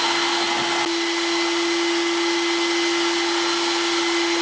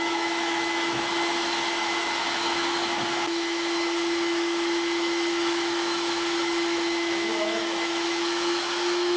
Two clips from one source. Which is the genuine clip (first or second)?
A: first